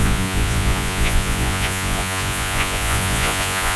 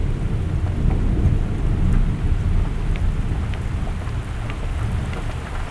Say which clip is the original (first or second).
second